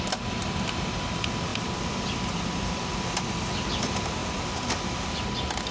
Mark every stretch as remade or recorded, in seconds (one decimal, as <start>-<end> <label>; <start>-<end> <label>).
0.0-1.5 recorded; 1.5-3.0 remade; 3.0-5.7 recorded